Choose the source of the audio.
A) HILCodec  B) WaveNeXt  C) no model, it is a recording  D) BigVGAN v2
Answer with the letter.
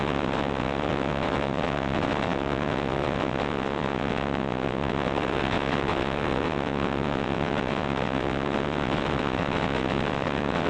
B